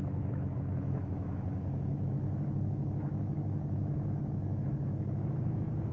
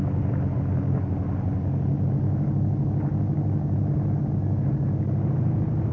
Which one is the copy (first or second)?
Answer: first